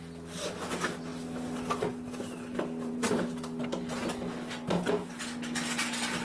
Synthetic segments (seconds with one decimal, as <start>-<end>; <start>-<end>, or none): none